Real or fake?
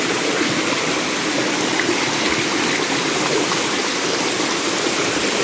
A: real